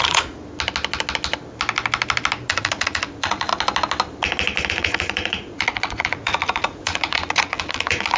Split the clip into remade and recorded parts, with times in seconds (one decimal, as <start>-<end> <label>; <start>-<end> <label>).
0.0-0.4 remade; 0.4-2.5 recorded; 2.5-3.5 remade; 3.5-4.7 recorded; 4.7-8.2 remade